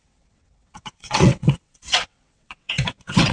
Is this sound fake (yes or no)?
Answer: yes